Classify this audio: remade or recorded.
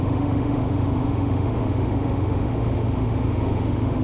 remade